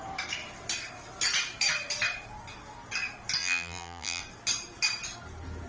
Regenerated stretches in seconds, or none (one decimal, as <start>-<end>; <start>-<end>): 3.4-4.2